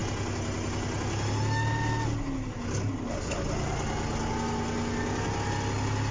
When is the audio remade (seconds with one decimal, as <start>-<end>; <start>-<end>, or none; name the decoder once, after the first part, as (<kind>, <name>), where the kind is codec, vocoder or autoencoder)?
none